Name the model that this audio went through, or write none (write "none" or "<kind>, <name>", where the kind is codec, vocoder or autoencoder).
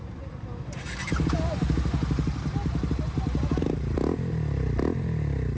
none